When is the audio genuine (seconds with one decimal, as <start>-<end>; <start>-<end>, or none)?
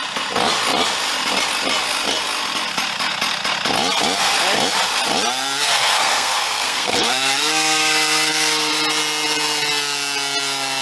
0.0-5.6; 8.7-10.8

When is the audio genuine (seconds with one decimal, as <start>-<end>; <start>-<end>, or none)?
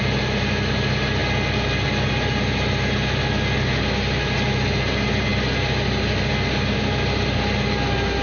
0.0-8.2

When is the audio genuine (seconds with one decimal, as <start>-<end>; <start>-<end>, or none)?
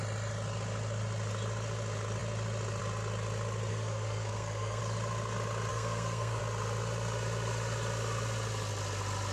0.0-3.7; 4.8-5.7; 6.4-9.3